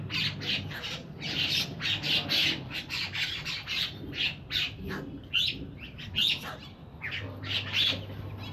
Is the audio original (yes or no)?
yes